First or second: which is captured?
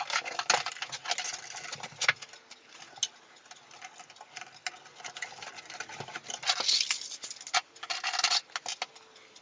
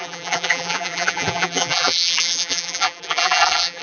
first